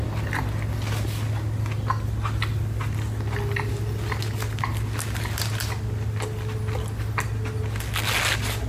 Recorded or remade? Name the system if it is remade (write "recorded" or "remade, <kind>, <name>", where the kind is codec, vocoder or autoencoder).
recorded